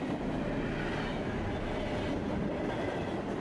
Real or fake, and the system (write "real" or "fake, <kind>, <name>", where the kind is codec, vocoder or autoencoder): real